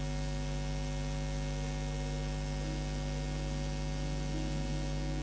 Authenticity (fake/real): real